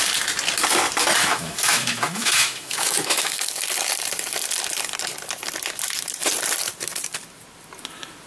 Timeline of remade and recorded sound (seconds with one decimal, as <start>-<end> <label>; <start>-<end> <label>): 0.0-1.3 recorded; 1.3-3.4 remade; 3.4-8.3 recorded